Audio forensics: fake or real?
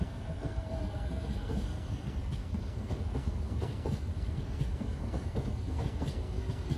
fake